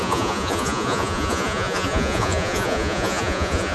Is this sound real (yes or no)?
no